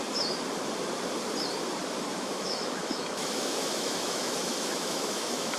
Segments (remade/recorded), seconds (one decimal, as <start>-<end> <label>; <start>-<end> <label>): 0.0-2.1 recorded; 2.1-5.6 remade